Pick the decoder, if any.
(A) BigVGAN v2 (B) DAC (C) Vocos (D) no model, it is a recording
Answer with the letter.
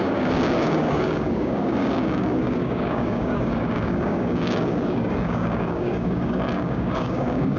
B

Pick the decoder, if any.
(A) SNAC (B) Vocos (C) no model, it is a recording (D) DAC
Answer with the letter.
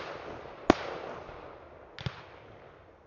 C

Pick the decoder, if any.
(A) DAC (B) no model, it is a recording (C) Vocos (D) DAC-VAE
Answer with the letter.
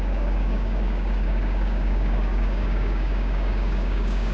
A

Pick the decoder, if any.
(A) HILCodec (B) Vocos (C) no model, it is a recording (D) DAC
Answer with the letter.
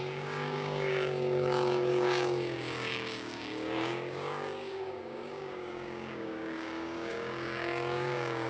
D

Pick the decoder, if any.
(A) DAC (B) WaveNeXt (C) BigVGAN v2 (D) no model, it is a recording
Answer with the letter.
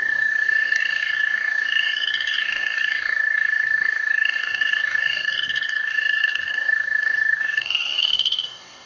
A